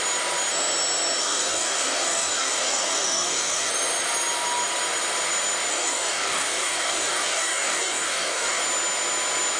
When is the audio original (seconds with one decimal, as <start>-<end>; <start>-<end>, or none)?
0.0-1.2; 3.7-5.7; 8.6-9.6